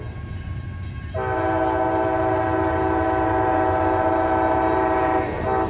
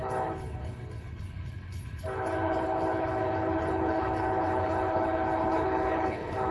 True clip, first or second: first